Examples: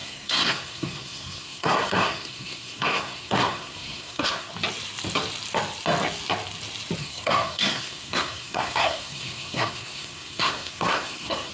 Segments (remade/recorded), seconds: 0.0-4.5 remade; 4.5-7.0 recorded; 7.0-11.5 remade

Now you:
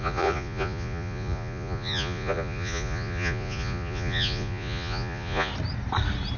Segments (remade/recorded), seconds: 0.0-5.5 remade; 5.5-6.4 recorded

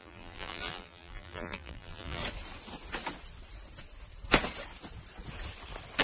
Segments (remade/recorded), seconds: 0.0-2.2 remade; 2.2-6.0 recorded